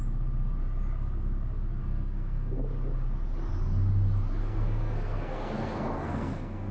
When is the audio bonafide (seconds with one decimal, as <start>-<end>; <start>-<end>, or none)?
0.0-1.8; 2.6-4.4